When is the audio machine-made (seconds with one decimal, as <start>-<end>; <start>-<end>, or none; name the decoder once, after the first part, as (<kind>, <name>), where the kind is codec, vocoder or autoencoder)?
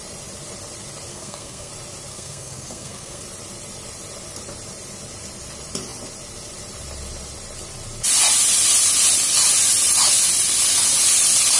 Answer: 1.1-1.7 (codec, SNAC); 2.1-3.2